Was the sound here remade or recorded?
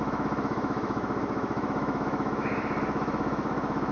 remade